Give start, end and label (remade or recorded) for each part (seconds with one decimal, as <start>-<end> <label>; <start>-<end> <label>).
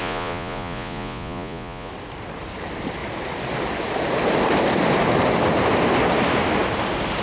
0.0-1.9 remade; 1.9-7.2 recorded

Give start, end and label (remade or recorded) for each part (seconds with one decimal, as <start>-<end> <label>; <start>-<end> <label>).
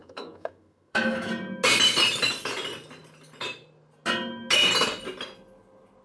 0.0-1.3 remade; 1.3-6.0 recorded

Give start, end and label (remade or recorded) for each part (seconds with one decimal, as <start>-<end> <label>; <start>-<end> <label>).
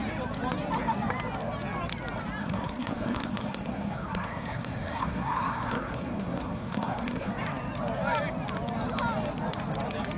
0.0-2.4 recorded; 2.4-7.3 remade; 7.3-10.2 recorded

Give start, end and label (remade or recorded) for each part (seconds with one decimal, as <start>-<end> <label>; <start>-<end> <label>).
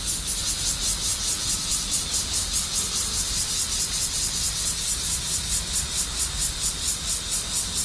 0.0-0.5 remade; 0.5-7.8 recorded